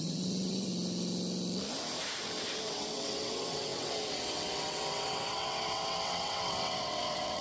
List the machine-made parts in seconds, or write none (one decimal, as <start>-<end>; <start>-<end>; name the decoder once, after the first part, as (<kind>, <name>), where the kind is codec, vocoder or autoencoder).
0.0-0.7 (vocoder, WaveNeXt); 2.6-7.4